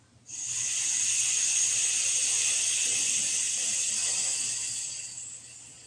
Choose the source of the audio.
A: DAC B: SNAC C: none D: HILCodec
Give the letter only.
C